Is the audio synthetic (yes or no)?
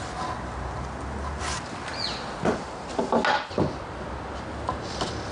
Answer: no